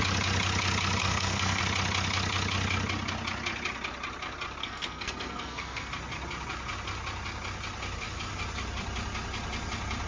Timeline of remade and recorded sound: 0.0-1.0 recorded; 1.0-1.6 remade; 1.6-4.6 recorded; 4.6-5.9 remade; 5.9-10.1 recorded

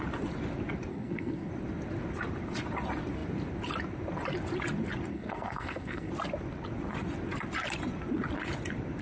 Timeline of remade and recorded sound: 0.0-0.9 recorded; 0.9-1.5 remade; 1.5-5.1 recorded; 5.1-6.1 remade; 6.1-9.0 recorded

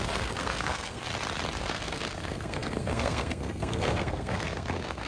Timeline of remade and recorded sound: 0.0-1.1 remade; 1.1-1.6 recorded; 1.6-5.1 remade

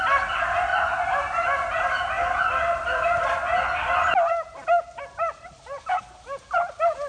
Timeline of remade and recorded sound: 0.0-7.1 recorded

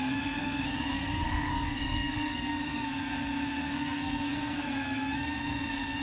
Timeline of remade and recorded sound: 0.0-6.0 remade